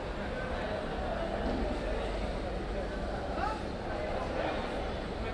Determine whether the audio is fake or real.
real